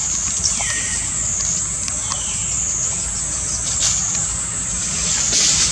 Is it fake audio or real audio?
real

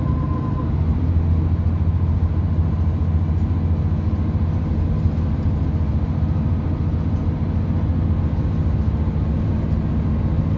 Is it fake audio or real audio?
real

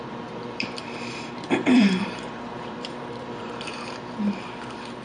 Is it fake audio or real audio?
fake